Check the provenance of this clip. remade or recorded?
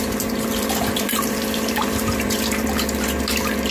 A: remade